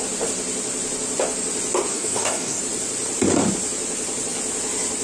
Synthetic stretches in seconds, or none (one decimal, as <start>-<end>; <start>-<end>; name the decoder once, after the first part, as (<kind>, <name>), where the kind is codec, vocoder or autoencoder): 1.9-2.6 (codec, DAC)